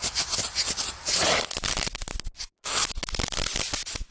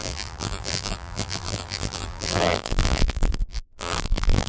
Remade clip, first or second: second